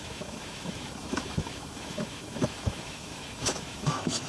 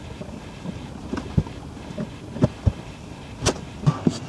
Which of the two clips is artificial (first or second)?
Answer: first